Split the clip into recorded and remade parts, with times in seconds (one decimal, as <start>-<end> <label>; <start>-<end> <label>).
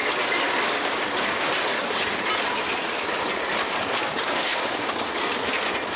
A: 0.0-2.2 remade; 2.2-3.6 recorded; 3.6-5.0 remade; 5.0-6.0 recorded